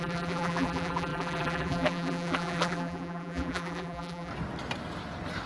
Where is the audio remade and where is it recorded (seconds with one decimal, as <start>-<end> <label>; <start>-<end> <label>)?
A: 0.0-4.3 remade; 4.3-5.5 recorded